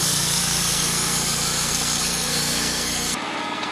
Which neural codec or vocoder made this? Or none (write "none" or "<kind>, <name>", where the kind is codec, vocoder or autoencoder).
codec, SNAC